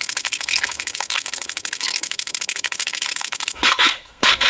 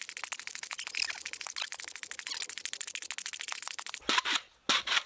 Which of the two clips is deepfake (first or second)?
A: first